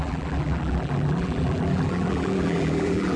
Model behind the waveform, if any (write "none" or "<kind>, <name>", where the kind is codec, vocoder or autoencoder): vocoder, BigVGAN v2